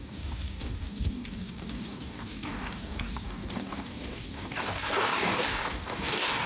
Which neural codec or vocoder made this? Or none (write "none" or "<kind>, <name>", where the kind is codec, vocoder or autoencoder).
codec, DAC